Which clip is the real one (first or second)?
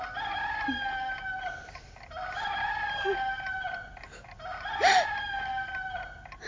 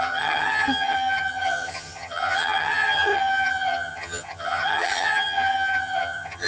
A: first